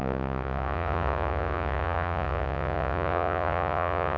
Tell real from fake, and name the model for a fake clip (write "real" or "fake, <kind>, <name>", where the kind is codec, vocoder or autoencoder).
fake, vocoder, Vocos